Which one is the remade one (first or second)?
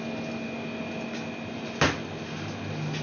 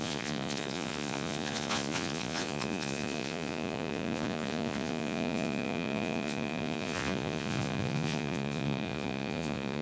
second